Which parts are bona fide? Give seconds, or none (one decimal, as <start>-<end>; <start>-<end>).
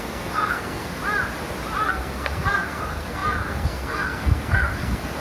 1.0-1.8